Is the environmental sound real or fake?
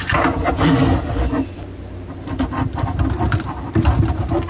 real